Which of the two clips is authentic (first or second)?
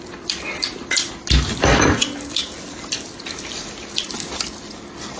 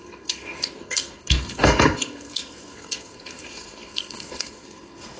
first